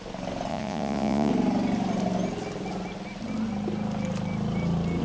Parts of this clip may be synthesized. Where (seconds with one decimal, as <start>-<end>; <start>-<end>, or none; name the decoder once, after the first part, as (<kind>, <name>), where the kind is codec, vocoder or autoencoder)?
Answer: 0.5-1.3 (vocoder, Vocos)